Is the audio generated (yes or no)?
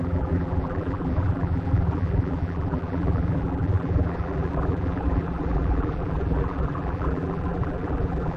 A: yes